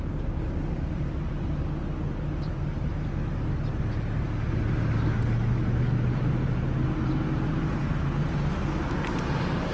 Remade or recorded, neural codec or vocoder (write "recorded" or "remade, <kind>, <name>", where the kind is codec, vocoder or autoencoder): recorded